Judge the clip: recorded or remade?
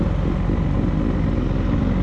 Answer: recorded